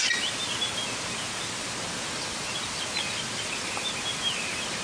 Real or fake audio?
real